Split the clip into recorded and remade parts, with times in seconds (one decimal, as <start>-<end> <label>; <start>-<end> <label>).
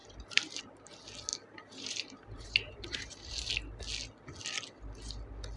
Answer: 0.0-0.6 remade; 0.6-1.3 recorded; 1.3-3.5 remade; 3.5-5.6 recorded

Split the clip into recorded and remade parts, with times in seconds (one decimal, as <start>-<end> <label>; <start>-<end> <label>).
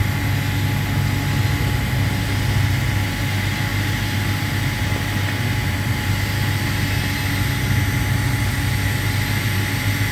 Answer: 0.0-3.7 recorded; 3.7-5.9 remade; 5.9-10.1 recorded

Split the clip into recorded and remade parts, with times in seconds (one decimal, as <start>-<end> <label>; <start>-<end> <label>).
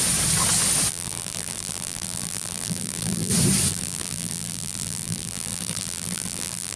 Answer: 0.0-0.9 recorded; 0.9-3.3 remade; 3.3-3.7 recorded; 3.7-6.8 remade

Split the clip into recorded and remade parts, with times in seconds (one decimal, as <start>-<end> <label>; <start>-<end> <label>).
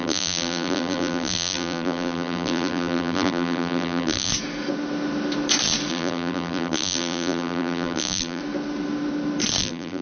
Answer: 0.0-4.3 remade; 4.3-5.9 recorded; 5.9-8.4 remade; 8.4-9.6 recorded; 9.6-10.0 remade